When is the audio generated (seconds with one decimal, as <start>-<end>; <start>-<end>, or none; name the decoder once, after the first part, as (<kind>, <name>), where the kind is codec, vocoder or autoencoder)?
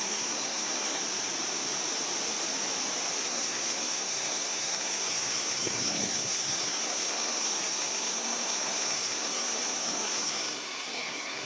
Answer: 0.0-1.0 (codec, SNAC); 3.2-11.4